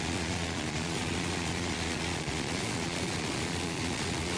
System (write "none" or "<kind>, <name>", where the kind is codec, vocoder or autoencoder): vocoder, Vocos